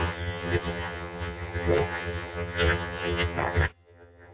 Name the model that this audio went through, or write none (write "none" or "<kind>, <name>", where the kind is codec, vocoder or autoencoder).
vocoder, HiFi-GAN